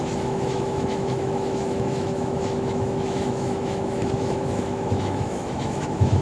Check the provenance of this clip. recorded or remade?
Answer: remade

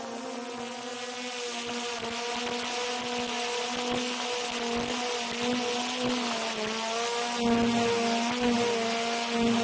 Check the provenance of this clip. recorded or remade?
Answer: recorded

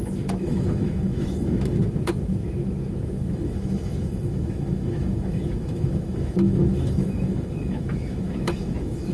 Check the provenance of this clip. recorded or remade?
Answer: remade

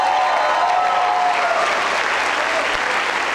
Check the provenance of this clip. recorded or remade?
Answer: recorded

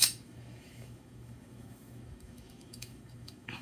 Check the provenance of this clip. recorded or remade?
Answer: remade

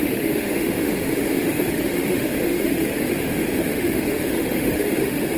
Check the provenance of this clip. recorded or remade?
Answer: remade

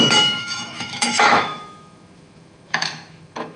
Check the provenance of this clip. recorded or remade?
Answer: remade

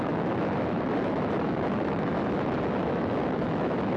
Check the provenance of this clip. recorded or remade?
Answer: remade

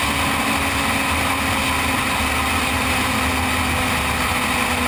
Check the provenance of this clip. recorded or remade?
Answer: recorded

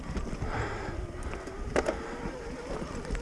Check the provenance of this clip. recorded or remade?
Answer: recorded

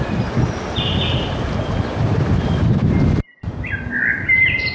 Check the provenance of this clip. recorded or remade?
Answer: recorded